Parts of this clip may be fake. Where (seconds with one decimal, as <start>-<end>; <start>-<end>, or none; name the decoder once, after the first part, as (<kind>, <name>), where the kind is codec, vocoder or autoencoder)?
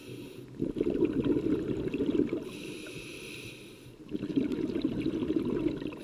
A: none